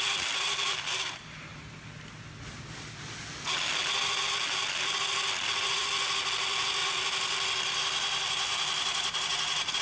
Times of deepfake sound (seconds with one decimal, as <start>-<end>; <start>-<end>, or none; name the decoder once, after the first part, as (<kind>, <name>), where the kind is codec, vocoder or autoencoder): none